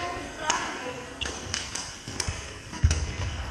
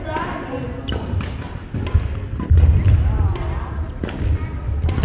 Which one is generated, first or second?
first